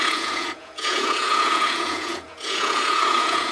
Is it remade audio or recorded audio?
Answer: remade